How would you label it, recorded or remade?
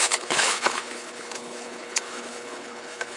remade